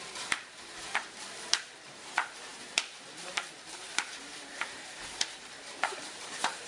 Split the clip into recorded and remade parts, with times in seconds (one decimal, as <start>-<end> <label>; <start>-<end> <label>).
0.0-6.7 remade